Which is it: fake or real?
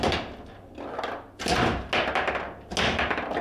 real